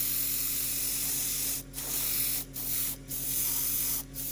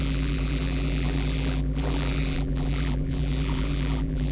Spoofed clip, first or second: second